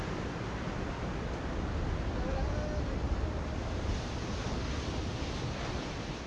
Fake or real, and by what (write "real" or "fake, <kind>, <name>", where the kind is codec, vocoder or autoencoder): real